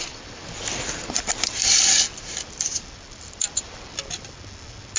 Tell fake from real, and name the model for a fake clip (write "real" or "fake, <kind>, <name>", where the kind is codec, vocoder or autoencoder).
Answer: real